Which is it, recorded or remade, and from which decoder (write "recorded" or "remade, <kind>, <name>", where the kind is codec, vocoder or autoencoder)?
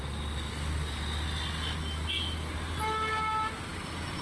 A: recorded